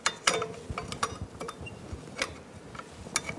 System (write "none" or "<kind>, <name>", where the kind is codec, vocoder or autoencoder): none